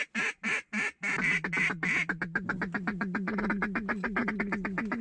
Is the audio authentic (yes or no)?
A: yes